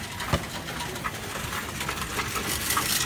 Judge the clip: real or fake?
real